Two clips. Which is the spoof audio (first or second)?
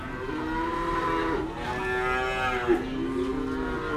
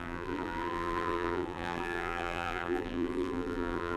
second